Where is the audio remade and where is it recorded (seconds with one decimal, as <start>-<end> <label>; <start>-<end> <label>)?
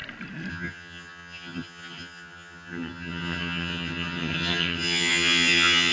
0.0-0.5 recorded; 0.5-5.9 remade